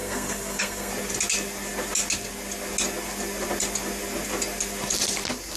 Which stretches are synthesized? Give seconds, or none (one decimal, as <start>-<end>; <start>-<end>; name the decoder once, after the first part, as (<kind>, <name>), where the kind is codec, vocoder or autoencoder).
0.0-0.9 (codec, SNAC)